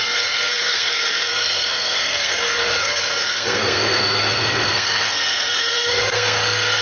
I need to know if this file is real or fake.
fake